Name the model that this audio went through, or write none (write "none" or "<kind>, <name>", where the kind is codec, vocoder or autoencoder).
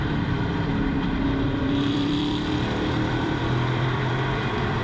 vocoder, BigVGAN v2